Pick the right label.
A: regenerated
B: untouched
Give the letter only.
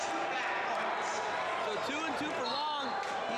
B